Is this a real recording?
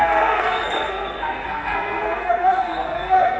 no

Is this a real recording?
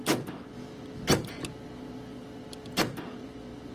yes